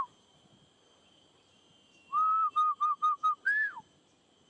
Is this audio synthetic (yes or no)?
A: yes